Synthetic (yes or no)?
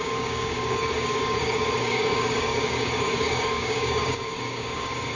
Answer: yes